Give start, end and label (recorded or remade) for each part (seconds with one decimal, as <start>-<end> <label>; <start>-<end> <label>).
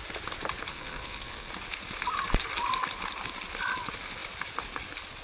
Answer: 0.0-0.7 recorded; 0.7-1.5 remade; 1.5-5.2 recorded